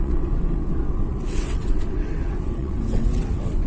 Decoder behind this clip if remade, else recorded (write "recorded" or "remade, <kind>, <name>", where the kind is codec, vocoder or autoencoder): remade, vocoder, WaveNeXt